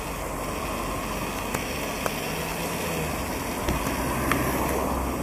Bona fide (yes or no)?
yes